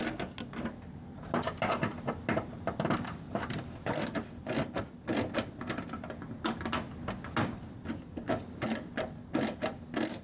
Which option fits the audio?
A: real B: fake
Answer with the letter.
A